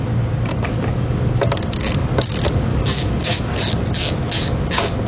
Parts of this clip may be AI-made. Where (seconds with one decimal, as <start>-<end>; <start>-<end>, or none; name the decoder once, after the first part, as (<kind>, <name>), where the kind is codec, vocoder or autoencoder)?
0.5-2.3 (codec, DAC); 2.7-3.6